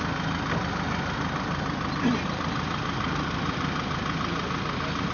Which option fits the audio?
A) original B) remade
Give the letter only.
A